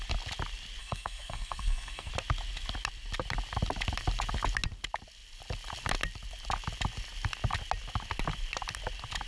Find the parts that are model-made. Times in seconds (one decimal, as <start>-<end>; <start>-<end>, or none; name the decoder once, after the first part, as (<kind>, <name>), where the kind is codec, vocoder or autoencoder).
0.8-2.1 (codec, SNAC)